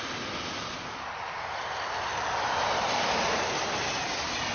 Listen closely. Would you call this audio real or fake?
real